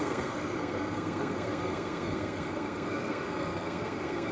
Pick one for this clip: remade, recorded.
remade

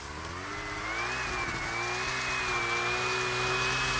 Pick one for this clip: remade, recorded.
recorded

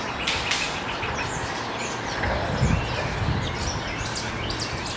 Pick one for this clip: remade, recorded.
recorded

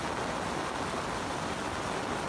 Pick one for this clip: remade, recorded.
recorded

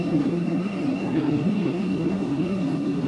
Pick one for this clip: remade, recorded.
remade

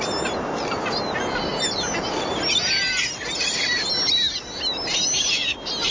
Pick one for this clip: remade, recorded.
recorded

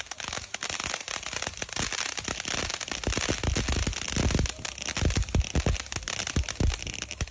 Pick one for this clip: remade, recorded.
recorded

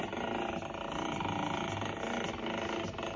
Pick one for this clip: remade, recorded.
recorded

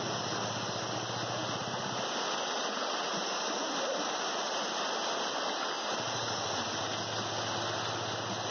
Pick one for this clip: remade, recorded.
recorded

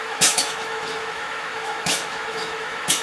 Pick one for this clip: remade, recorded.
remade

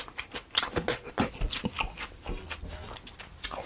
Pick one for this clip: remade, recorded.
recorded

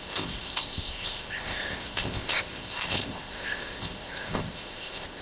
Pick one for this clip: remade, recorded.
remade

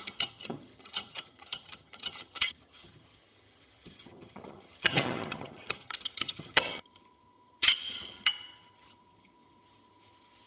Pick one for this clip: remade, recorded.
remade